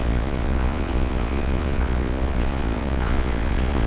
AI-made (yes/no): yes